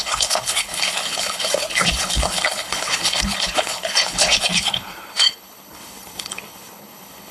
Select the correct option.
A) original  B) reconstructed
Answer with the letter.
B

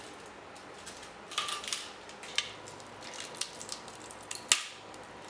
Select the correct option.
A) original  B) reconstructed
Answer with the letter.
A